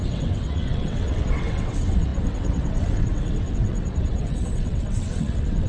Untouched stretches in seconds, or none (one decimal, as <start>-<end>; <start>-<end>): none